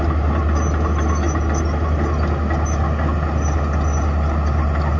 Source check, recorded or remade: recorded